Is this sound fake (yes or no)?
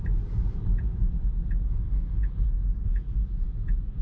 yes